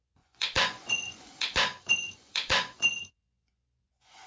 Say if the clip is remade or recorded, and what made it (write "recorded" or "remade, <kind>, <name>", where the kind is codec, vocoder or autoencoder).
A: remade, vocoder, Vocos